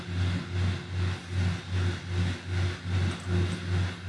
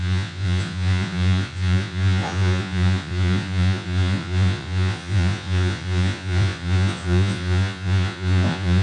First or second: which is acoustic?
first